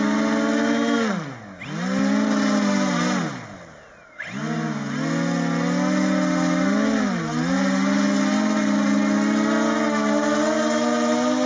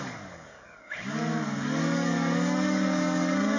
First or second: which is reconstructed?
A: second